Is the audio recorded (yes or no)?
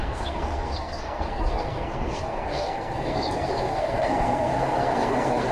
no